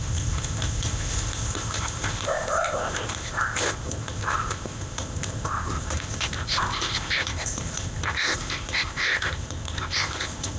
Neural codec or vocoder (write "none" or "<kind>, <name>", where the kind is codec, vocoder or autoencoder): codec, ZipCodec